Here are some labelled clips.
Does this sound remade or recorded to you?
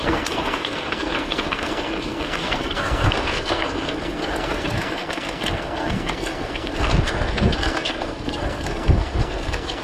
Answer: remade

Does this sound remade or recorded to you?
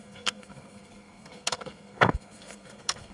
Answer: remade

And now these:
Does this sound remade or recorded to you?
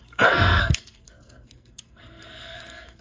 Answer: remade